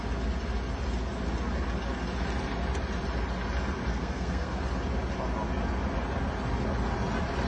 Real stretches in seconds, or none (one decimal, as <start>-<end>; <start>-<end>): 0.0-3.9; 4.6-7.5

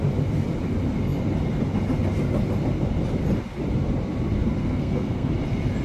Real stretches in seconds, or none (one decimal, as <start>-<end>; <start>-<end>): 0.0-4.6; 5.3-5.8

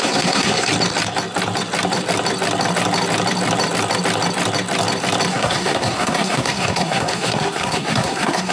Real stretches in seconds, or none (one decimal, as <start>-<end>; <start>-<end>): 0.7-5.3

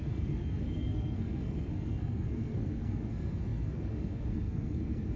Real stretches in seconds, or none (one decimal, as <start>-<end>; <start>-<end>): none

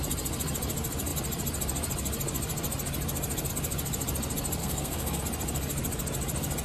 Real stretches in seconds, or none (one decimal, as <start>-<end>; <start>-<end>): 0.0-4.6; 5.2-6.6

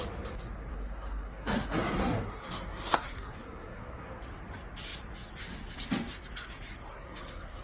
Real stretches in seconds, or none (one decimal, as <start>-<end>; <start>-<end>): 0.0-0.7; 4.2-6.9